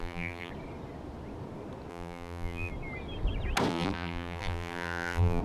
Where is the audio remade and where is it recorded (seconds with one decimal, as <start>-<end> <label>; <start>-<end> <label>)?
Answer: 0.0-0.5 remade; 0.5-1.9 recorded; 1.9-2.7 remade; 2.7-3.7 recorded; 3.7-5.4 remade